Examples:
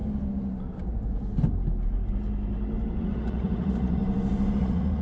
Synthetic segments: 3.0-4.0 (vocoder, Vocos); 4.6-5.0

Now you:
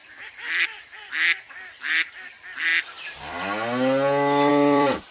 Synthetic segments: 0.0-2.7 (vocoder, BigVGAN v2); 4.5-5.1

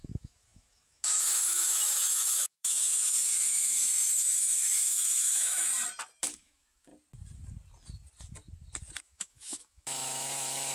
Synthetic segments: 0.0-5.7 (autoencoder, DAC-VAE); 6.2-6.9; 9.0-10.7

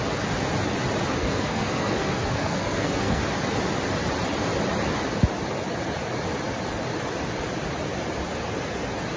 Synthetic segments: 1.2-3.2 (codec, SNAC)

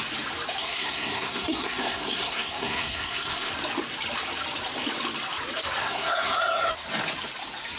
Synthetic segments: 0.6-3.5 (codec, SNAC); 5.8-6.7